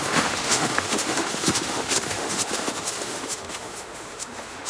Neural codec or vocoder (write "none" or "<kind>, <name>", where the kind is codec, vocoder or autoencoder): autoencoder, DAC-VAE